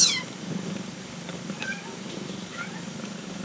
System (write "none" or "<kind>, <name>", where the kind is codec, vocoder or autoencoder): codec, DAC